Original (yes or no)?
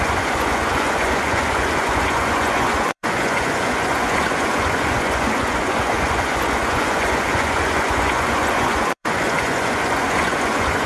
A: no